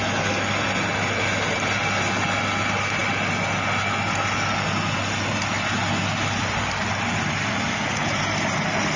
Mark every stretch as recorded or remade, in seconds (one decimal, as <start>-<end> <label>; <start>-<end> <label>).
0.0-9.0 recorded